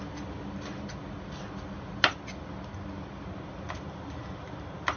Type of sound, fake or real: real